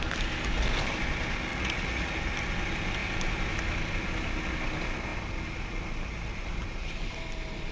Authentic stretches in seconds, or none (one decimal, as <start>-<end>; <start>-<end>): 0.0-1.5; 2.1-7.7